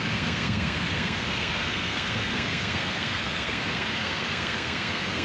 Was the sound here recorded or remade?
remade